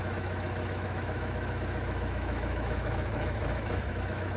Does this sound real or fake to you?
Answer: fake